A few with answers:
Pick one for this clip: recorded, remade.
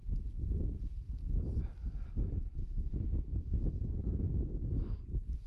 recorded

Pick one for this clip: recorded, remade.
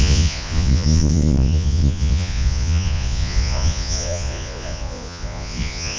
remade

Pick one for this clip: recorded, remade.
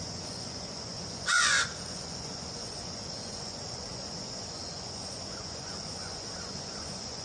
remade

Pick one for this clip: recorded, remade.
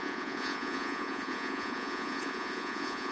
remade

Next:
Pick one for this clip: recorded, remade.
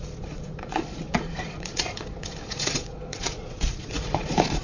remade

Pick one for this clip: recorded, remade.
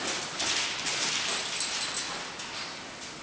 recorded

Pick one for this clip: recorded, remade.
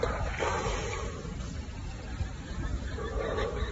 recorded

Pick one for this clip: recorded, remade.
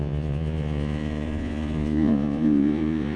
remade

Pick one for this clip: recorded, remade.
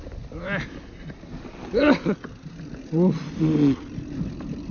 recorded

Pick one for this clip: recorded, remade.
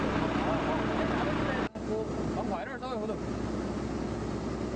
recorded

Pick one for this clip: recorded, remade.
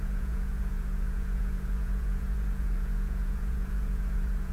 remade